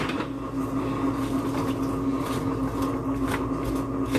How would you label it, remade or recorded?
recorded